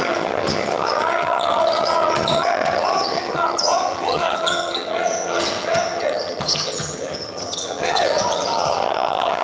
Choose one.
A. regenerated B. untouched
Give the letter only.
A